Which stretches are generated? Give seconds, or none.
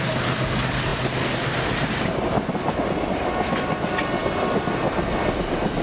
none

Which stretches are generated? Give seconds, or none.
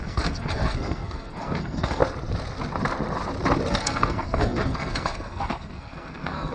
0.0-2.0 (codec, SNAC); 3.7-6.5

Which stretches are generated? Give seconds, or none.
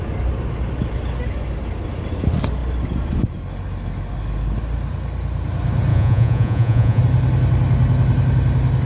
5.9-7.0 (vocoder, Vocos)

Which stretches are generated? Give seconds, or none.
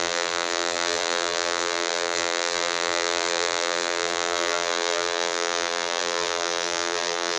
0.0-7.4 (vocoder, BigVGAN v2)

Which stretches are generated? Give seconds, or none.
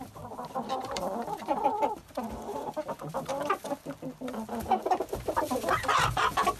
0.8-3.8 (vocoder, BigVGAN v2)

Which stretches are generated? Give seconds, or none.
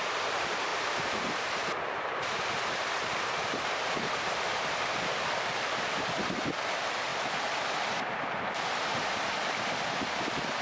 0.7-5.1 (vocoder, BigVGAN v2)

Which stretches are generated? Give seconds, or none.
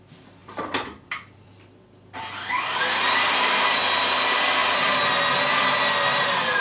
0.4-2.8 (vocoder, BigVGAN v2)